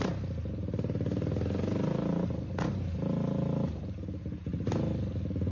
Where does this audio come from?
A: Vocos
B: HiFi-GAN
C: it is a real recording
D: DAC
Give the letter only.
C